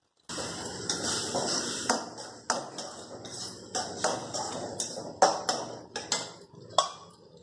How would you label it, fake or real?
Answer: real